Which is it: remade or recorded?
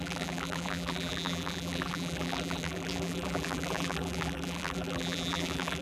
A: remade